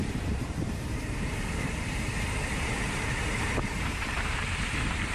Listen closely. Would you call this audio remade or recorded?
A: remade